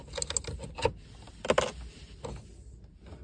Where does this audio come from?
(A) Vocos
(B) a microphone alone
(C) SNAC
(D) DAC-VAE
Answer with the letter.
B